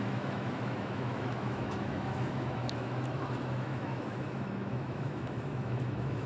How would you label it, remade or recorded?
remade